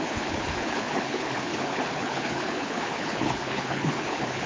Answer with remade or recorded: remade